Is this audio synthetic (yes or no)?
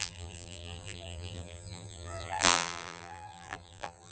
yes